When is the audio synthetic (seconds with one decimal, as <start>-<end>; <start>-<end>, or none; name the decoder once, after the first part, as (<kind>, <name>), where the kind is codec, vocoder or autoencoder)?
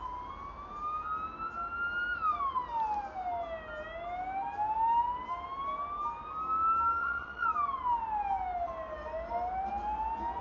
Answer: 7.0-7.5 (vocoder, Vocos)